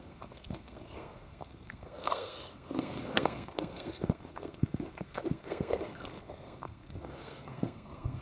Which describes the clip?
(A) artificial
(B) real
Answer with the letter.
A